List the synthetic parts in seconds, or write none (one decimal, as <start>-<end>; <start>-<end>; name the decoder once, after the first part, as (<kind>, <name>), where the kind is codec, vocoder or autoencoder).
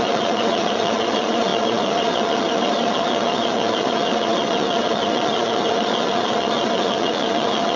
0.0-7.8 (vocoder, Vocos)